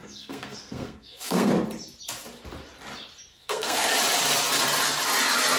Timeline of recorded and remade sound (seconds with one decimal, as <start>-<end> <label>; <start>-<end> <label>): 0.0-1.5 remade; 1.5-3.3 recorded; 3.3-3.9 remade; 3.9-5.6 recorded